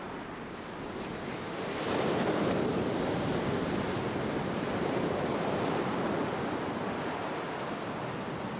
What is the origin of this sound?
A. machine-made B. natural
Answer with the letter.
A